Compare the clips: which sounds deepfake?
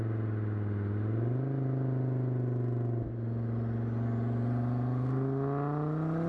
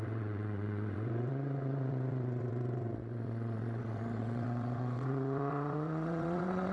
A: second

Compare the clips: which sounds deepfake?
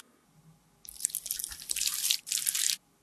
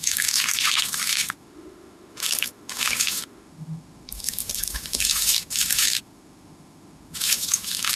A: second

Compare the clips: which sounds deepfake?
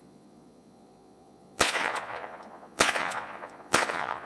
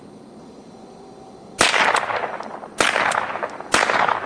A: first